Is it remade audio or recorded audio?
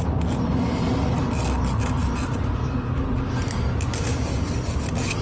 recorded